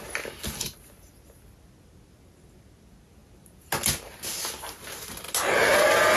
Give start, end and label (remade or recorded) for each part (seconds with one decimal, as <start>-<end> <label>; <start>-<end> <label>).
0.0-6.2 recorded